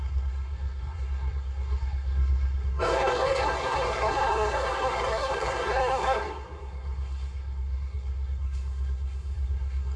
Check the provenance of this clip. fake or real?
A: fake